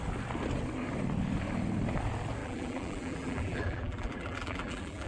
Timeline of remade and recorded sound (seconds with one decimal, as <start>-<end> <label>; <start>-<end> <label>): 0.0-2.4 recorded; 2.4-5.1 remade